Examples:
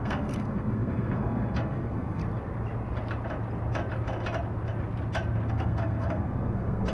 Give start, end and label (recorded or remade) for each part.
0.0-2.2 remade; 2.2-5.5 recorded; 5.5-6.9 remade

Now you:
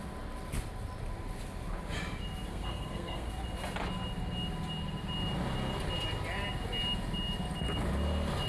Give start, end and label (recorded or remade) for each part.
0.0-2.5 recorded; 2.5-3.3 remade; 3.3-8.5 recorded

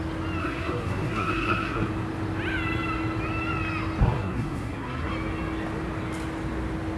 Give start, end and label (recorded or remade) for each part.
0.0-0.4 recorded; 0.4-1.9 remade; 1.9-4.0 recorded; 4.0-5.1 remade; 5.1-7.0 recorded

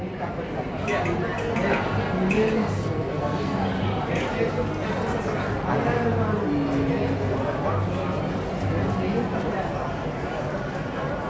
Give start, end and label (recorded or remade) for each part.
0.0-2.6 recorded; 2.6-3.6 remade; 3.6-11.3 recorded